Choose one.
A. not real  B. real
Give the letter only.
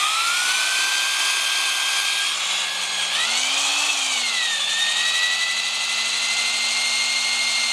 B